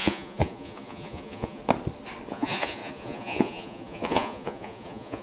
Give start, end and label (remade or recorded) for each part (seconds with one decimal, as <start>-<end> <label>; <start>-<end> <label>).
0.0-1.6 remade; 1.6-2.3 recorded; 2.3-5.2 remade